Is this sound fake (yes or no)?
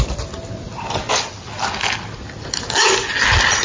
no